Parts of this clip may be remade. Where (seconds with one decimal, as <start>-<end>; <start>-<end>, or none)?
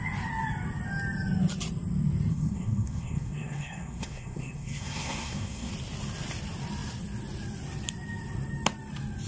2.3-5.7